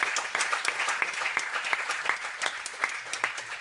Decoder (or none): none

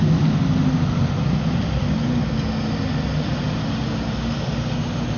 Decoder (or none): none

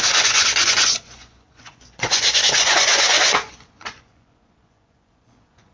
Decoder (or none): vocoder, Vocos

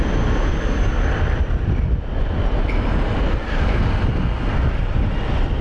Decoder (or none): none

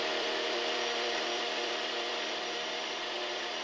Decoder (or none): vocoder, BigVGAN v2